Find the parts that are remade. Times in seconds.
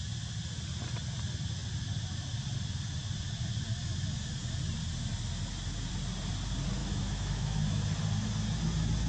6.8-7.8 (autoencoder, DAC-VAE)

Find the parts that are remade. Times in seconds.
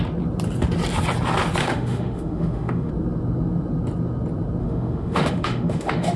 1.6-2.9 (autoencoder, DAC-VAE); 4.6-6.2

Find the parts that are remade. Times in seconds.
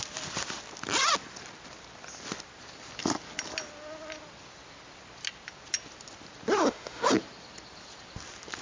6.6-7.1 (autoencoder, DAC-VAE)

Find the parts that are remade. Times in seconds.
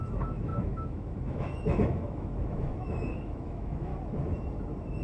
0.0-3.9 (autoencoder, DAC-VAE)